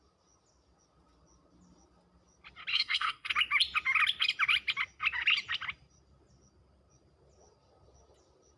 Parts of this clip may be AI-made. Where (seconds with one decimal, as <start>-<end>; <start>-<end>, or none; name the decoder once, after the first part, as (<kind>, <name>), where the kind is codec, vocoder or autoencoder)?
2.7-3.3 (codec, SNAC)